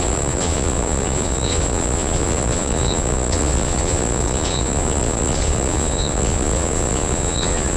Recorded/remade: remade